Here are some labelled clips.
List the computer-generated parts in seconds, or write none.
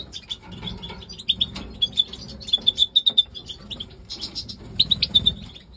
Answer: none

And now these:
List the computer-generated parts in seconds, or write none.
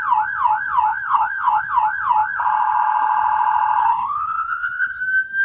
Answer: 0.9-1.7 (codec, HILCodec); 3.8-5.0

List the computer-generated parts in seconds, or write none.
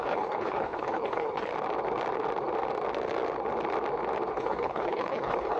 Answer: 0.0-1.5 (codec, HILCodec); 4.3-5.6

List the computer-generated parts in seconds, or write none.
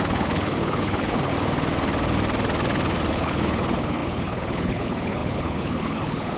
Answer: 0.0-1.3 (codec, HILCodec); 3.1-6.4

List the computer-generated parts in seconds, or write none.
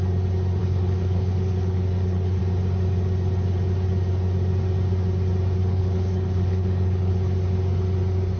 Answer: 0.6-2.4 (codec, HILCodec); 5.6-7.1